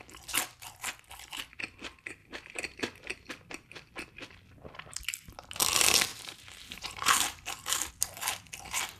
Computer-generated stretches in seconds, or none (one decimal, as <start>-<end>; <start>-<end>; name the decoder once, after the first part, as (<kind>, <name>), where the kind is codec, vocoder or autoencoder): 2.2-3.3 (vocoder, BigVGAN v2); 6.1-7.9